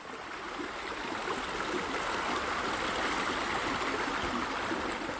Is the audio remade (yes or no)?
no